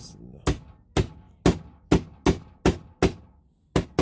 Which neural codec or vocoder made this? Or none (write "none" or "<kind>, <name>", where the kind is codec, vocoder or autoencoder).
none